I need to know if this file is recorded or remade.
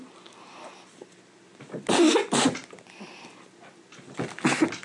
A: recorded